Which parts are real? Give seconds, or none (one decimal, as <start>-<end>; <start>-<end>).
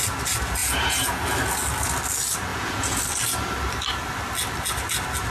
0.0-0.6; 1.2-2.5; 3.0-5.3